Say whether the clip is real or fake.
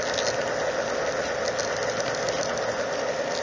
real